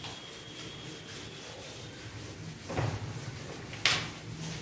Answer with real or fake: real